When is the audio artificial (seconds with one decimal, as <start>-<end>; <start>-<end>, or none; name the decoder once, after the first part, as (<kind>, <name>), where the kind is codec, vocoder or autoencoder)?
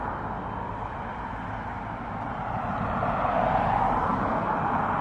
none